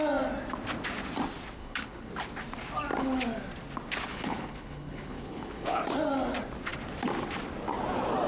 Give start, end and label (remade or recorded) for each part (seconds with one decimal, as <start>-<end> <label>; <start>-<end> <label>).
0.0-1.6 recorded; 1.6-2.1 remade; 2.1-4.1 recorded; 4.1-5.8 remade; 5.8-8.3 recorded